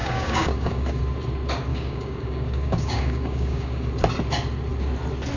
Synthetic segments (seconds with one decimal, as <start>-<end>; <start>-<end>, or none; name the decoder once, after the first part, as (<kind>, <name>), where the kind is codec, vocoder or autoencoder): 0.0-1.0 (codec, DAC); 1.7-3.9